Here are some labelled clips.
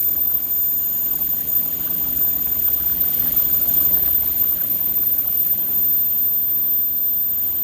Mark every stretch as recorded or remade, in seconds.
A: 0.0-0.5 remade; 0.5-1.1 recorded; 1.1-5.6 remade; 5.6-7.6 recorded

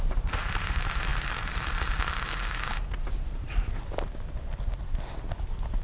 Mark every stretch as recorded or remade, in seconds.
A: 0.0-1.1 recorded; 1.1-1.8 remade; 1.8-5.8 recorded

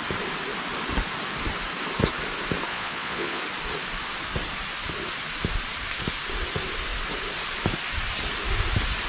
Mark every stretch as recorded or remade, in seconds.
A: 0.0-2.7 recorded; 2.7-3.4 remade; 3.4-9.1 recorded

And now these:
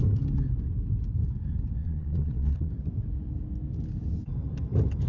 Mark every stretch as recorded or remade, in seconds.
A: 0.0-1.8 recorded; 1.8-2.7 remade; 2.7-5.1 recorded